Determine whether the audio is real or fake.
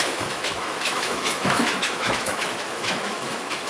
fake